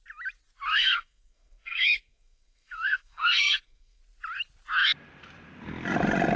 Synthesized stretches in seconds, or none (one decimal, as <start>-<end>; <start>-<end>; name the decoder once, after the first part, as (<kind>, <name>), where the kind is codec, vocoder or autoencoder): 0.7-4.0 (codec, SNAC)